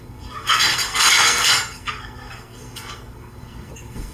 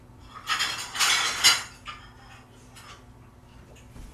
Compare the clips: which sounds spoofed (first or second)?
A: first